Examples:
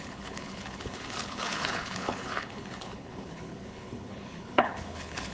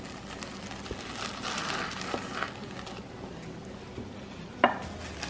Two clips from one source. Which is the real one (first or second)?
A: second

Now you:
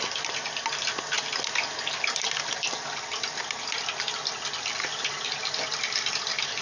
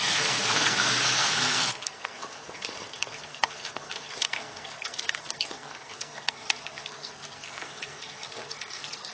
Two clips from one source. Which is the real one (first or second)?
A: first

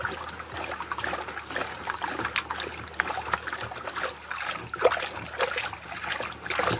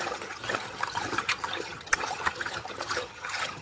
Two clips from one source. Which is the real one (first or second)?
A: first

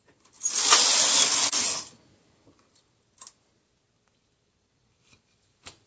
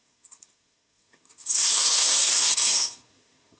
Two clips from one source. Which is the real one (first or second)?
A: first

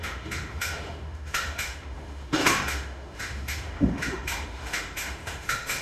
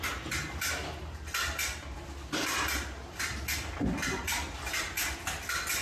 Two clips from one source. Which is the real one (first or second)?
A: second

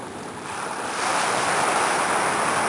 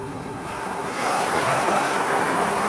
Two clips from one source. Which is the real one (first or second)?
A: first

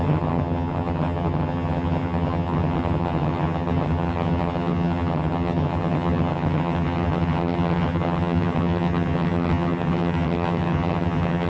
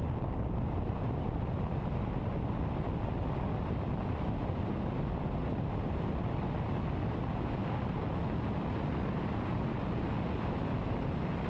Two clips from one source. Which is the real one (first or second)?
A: second